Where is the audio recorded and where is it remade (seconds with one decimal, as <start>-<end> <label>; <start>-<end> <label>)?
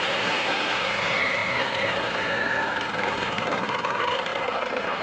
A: 0.0-5.0 remade